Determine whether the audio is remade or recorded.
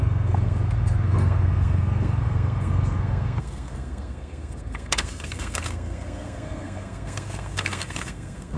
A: remade